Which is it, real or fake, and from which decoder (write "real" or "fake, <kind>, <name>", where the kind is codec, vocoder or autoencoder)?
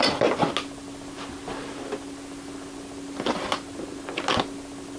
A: real